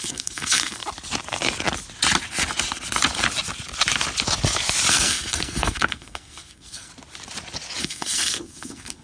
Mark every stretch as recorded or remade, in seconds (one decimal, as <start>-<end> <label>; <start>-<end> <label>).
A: 0.0-0.8 remade; 0.8-4.9 recorded; 4.9-6.9 remade; 6.9-7.8 recorded; 7.8-9.0 remade